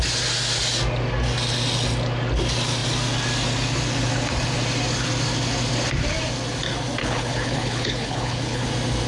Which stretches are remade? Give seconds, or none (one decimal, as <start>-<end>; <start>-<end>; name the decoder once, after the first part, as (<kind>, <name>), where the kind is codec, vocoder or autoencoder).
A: 7.0-8.7 (codec, HILCodec)